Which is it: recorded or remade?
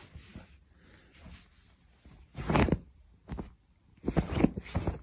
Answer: recorded